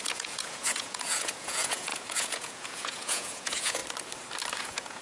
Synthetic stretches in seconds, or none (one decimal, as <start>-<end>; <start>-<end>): 0.0-3.8; 4.6-5.0